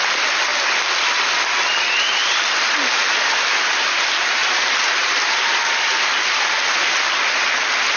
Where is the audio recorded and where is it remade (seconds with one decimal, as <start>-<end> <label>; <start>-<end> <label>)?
0.0-8.0 recorded